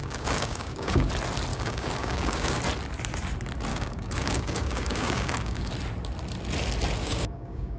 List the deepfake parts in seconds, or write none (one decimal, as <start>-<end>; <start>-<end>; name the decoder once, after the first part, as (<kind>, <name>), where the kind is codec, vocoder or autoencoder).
0.0-1.1 (codec, DAC); 1.5-2.6; 3.7-5.7; 7.0-7.8

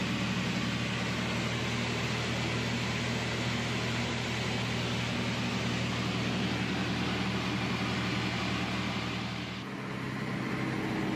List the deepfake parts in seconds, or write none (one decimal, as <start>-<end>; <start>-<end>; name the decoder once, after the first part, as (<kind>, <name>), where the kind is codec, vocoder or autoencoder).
none

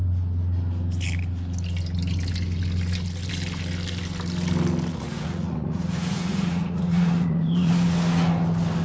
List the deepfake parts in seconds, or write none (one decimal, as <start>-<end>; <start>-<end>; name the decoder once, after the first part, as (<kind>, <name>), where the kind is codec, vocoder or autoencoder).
4.9-7.7 (vocoder, Vocos)

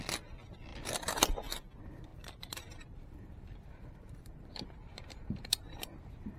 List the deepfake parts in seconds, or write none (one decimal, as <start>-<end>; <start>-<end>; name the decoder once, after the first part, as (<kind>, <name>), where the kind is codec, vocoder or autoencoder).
0.7-1.3 (vocoder, BigVGAN v2); 2.1-5.9

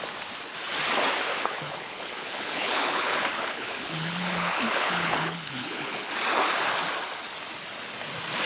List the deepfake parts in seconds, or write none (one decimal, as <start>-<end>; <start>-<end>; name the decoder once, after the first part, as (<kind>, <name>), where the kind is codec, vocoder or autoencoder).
1.3-6.1 (codec, HILCodec)

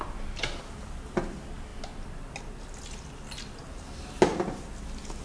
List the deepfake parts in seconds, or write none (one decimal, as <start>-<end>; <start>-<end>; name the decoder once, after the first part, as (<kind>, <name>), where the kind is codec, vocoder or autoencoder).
none

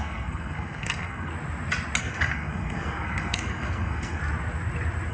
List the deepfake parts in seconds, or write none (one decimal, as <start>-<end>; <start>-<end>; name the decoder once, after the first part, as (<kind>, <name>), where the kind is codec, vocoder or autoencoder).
0.0-1.3 (codec, SNAC); 2.0-4.2